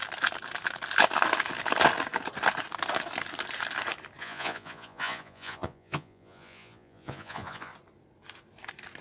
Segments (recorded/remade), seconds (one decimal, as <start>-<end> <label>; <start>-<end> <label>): 0.0-4.2 recorded; 4.2-7.7 remade; 7.7-9.0 recorded